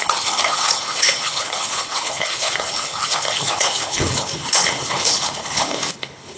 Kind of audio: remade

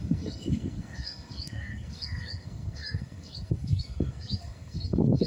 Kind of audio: remade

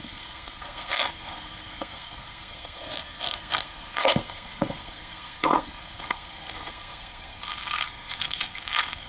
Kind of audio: remade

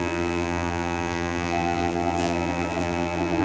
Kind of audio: remade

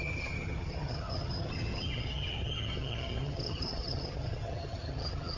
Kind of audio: remade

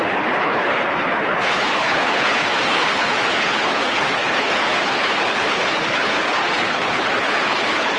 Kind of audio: remade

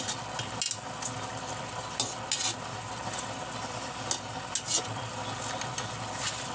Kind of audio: recorded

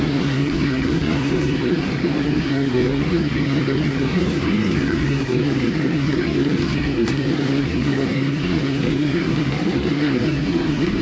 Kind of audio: remade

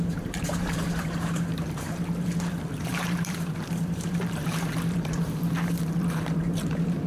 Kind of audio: remade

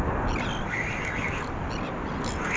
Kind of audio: recorded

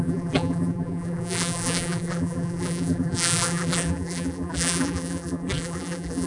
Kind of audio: remade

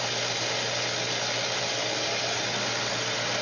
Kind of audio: recorded